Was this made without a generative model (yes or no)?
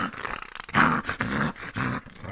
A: yes